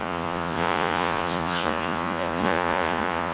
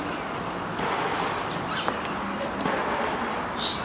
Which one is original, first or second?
second